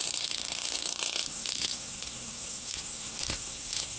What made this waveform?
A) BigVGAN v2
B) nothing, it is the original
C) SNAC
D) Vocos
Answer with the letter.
C